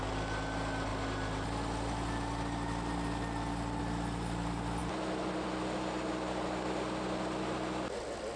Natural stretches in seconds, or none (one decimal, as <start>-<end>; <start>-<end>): 0.0-8.4